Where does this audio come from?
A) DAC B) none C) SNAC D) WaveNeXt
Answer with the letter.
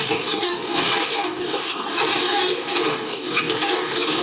A